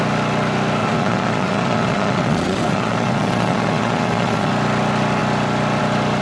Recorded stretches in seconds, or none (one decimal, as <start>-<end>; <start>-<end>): 0.0-0.8; 4.5-6.2